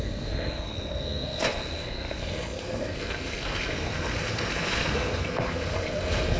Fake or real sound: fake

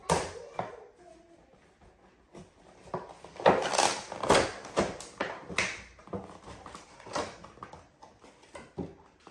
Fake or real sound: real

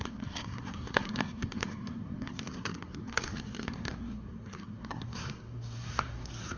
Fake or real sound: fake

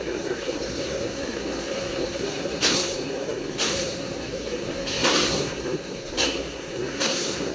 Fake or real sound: fake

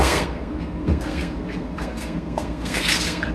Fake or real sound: fake